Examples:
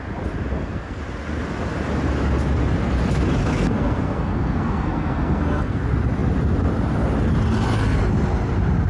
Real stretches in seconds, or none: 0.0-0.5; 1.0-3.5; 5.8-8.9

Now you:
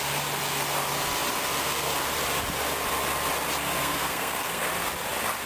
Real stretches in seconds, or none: 0.0-3.8; 4.7-5.5

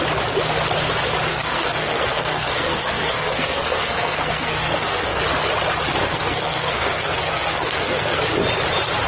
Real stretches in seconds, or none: 0.0-1.3; 5.2-6.0; 8.2-9.1

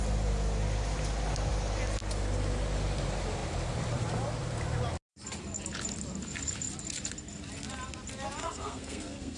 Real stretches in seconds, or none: 0.0-8.4

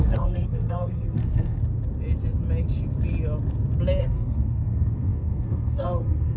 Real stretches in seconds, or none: 1.6-4.0

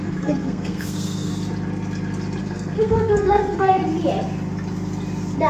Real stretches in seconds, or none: 1.3-2.4; 3.8-5.5